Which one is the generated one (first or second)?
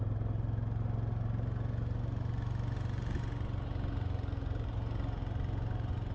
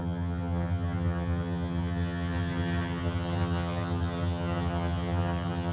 second